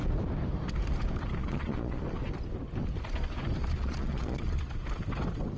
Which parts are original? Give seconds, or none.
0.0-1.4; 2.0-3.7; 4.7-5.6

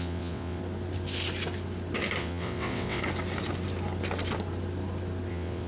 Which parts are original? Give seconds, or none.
0.6-2.2; 3.0-5.3

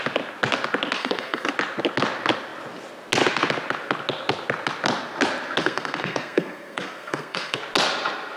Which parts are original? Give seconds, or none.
0.0-1.0; 1.5-5.6; 7.6-8.4

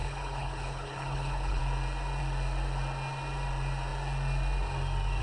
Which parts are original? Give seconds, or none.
1.6-5.2

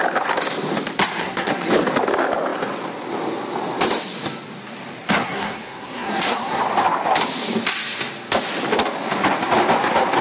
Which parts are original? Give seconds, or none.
0.0-1.2; 1.7-5.2; 6.6-10.2

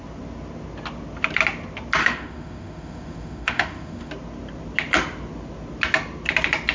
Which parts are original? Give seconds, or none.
0.0-2.0; 4.1-6.7

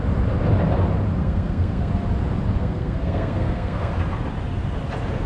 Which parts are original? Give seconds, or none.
0.0-1.2; 1.9-2.6; 3.9-5.3